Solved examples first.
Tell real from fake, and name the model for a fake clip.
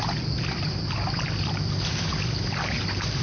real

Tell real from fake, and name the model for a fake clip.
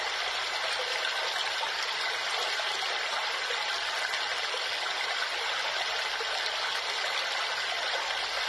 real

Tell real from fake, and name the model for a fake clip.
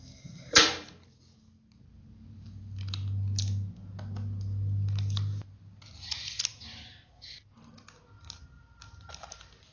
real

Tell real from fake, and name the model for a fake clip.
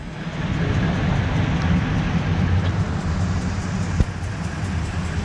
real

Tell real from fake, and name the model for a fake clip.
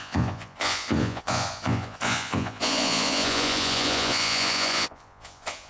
fake, vocoder, Vocos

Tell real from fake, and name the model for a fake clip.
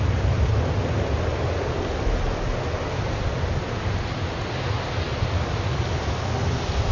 real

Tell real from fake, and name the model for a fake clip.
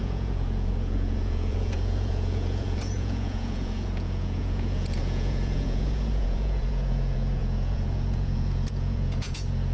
fake, vocoder, Vocos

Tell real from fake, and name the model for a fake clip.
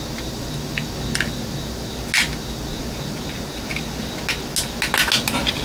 real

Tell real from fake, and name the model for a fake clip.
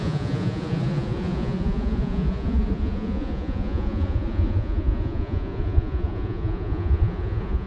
fake, vocoder, Vocos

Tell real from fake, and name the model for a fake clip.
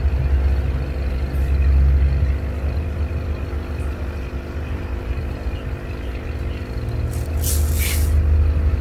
real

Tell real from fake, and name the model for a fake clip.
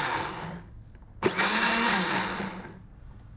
real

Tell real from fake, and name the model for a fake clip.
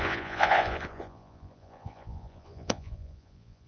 fake, vocoder, Vocos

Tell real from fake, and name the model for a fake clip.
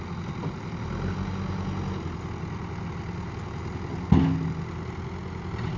real